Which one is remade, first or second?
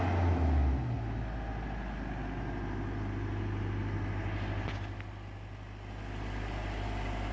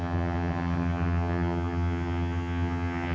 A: second